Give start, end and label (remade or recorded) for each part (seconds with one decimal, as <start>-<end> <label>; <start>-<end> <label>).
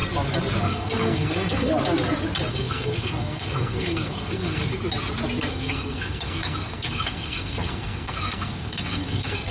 0.0-0.6 recorded; 0.6-1.7 remade; 1.7-2.5 recorded; 2.5-4.6 remade; 4.6-5.5 recorded; 5.5-9.5 remade